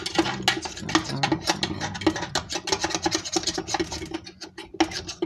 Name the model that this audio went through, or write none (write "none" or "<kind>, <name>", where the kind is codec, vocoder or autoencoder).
none